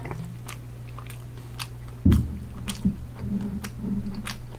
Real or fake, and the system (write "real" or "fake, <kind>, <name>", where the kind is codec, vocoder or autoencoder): real